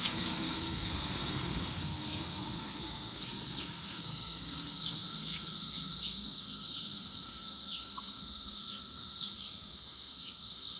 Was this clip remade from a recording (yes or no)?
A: yes